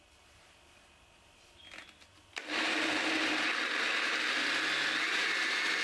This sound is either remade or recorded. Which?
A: recorded